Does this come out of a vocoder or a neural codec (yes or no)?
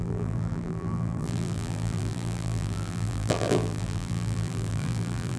yes